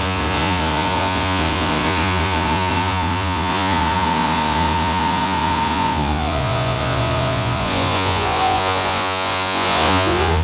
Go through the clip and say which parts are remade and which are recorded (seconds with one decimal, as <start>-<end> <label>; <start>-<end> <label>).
0.0-10.4 remade